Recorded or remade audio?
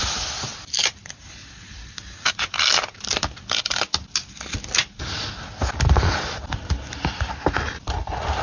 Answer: recorded